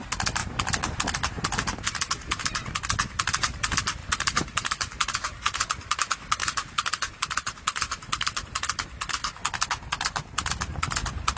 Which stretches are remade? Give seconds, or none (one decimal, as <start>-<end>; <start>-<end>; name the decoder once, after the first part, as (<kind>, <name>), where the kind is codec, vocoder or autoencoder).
0.4-1.0 (vocoder, BigVGAN v2); 4.0-6.0; 6.4-8.4